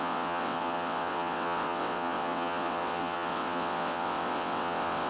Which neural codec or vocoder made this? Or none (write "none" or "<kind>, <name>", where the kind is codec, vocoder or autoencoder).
vocoder, WaveNeXt